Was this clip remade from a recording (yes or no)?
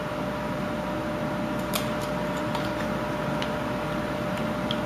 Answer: no